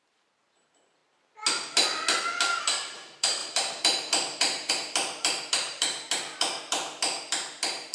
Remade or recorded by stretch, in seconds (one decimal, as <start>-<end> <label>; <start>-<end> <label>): 0.0-1.0 remade; 1.0-2.6 recorded; 2.6-7.9 remade